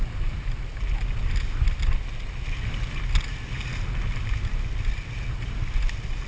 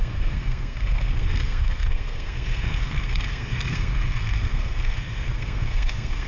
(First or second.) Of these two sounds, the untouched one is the first